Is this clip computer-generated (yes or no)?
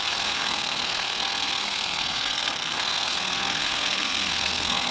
yes